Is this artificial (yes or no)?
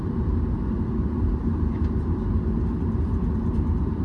no